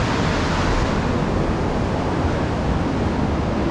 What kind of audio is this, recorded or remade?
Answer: recorded